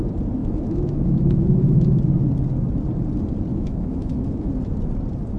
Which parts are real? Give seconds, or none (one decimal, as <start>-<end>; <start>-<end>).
0.0-0.4; 2.0-3.5; 4.5-5.4